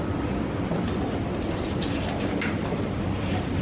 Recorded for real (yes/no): no